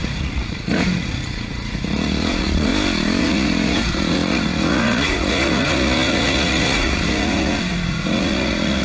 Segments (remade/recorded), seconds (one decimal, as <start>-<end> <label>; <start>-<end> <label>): 0.0-2.7 remade; 2.7-3.2 recorded; 3.2-8.8 remade